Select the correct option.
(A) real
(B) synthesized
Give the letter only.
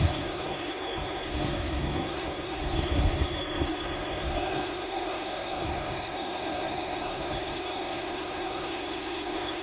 B